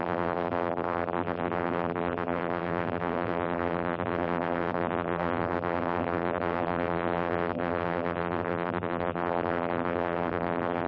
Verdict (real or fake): fake